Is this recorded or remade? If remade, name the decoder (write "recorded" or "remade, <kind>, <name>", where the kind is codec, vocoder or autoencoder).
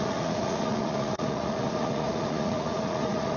remade, vocoder, Vocos